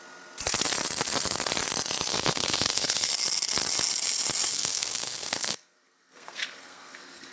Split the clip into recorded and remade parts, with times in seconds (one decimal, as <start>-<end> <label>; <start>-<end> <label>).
0.0-2.1 recorded; 2.1-3.1 remade; 3.1-4.5 recorded; 4.5-7.3 remade